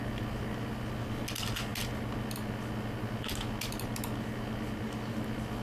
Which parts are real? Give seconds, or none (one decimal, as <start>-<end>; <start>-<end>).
0.0-5.6

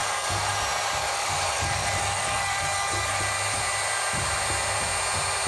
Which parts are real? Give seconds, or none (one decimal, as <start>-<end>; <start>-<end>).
0.5-1.0; 3.2-5.5

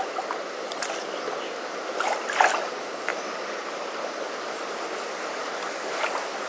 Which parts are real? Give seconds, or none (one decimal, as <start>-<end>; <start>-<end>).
0.0-6.5

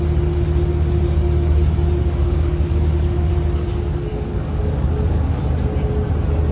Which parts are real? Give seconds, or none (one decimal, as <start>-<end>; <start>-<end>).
0.0-2.0; 3.3-4.1; 5.4-6.5

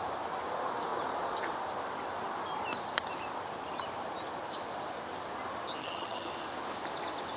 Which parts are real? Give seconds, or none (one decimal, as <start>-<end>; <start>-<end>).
0.0-5.8; 6.3-7.4

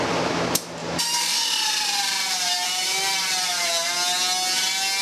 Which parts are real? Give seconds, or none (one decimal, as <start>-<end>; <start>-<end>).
0.0-0.8; 3.5-5.0